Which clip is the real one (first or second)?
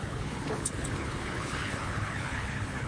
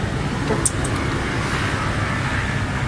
second